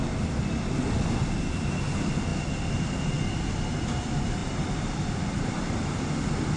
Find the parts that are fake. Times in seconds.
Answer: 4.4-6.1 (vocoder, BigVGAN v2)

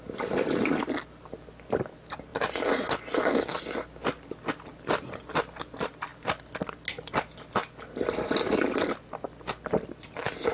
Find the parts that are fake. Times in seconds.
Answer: none

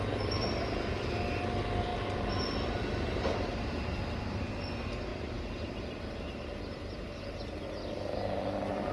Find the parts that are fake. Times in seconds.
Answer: 5.1-8.9 (vocoder, BigVGAN v2)

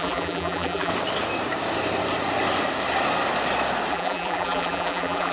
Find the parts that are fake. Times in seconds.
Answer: 0.0-0.9 (vocoder, BigVGAN v2); 3.9-5.3